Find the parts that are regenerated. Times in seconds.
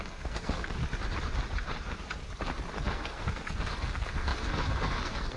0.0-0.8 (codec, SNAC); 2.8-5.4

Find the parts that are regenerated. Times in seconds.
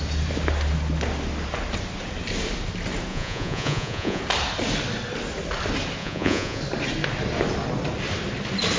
3.1-4.2 (vocoder, Vocos); 6.0-6.6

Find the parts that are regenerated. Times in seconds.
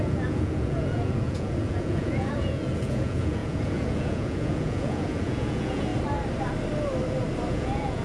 0.0-5.9 (vocoder, Vocos); 7.5-8.0